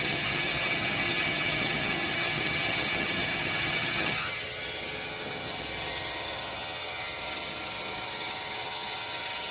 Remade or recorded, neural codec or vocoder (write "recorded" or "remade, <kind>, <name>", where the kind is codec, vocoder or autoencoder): remade, vocoder, HiFi-GAN